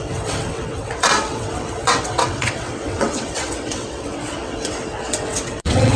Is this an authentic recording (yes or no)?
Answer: no